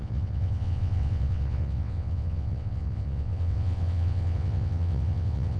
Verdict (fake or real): fake